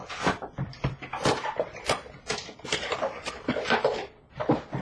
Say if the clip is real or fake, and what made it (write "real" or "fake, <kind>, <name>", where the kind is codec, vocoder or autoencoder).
fake, vocoder, BigVGAN v2